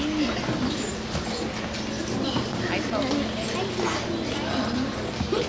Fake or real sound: real